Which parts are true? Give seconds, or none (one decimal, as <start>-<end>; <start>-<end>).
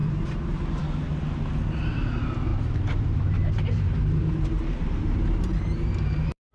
0.8-2.5